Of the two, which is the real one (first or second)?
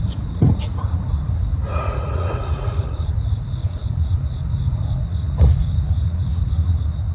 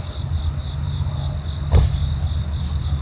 second